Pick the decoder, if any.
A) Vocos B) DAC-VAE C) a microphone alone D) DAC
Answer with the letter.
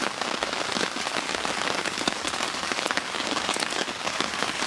D